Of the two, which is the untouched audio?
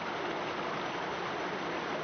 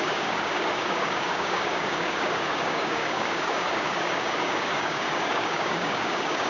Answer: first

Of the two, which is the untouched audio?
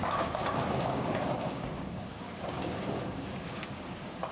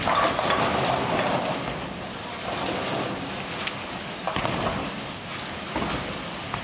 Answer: second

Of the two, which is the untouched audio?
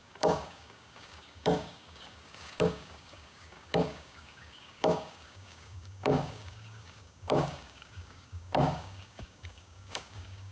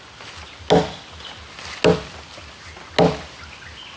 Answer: second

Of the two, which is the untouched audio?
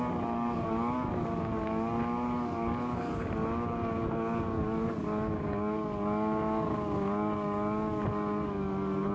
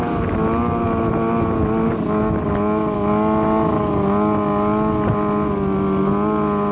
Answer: second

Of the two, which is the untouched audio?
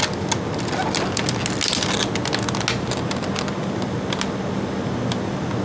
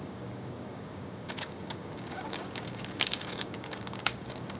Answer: first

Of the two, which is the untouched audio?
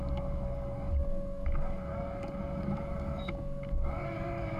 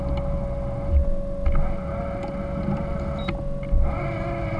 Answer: second